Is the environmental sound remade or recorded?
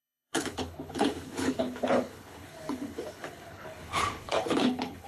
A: remade